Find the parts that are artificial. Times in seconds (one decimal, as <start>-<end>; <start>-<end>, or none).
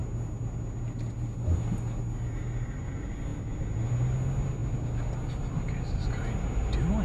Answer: none